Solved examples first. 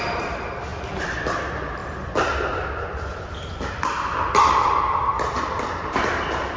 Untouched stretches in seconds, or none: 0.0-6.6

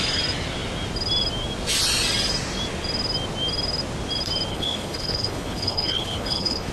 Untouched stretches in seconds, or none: 0.0-4.5

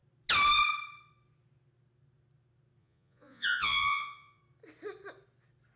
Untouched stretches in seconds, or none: 0.0-2.8; 4.4-5.8

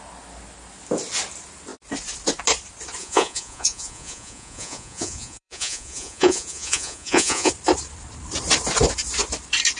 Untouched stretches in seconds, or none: 0.0-3.0; 7.5-9.8

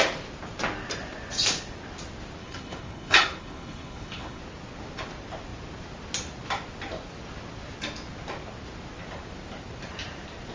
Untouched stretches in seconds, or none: 0.0-2.4; 4.4-10.5

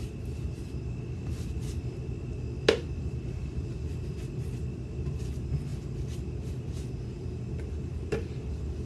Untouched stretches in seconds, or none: 0.0-8.9

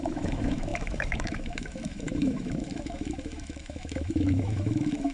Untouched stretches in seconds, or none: none

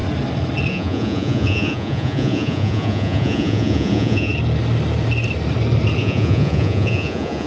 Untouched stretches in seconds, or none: 0.0-0.7; 4.3-6.0